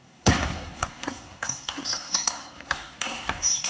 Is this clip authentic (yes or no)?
no